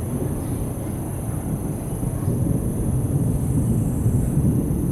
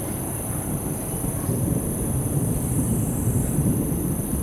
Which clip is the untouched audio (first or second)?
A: first